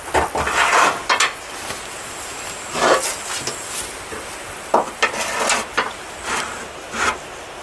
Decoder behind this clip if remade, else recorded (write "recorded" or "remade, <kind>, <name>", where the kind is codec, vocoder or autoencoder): recorded